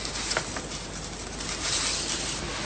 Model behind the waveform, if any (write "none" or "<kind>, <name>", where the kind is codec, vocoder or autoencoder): none